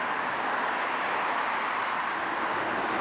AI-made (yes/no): no